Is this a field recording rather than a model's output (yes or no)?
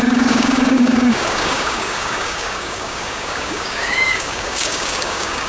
no